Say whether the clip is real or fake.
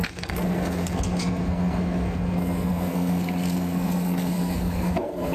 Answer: fake